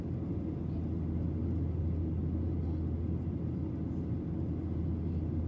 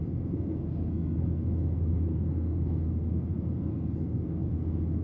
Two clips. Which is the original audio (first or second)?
first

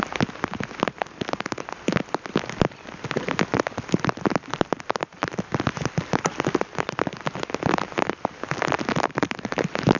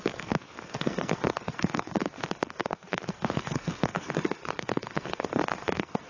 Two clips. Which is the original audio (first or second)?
first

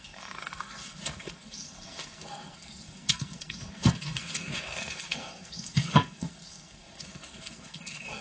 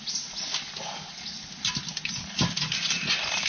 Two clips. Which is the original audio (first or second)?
second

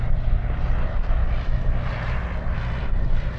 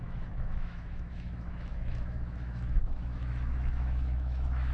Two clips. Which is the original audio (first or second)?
first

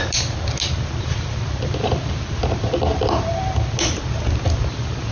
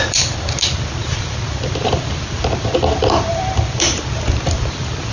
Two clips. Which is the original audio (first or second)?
first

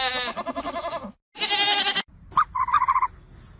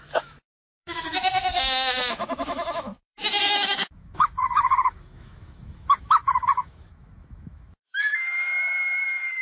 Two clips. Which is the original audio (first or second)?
first